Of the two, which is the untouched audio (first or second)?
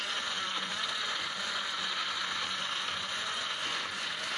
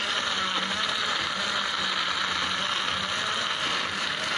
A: second